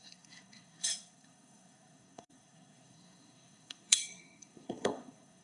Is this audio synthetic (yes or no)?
yes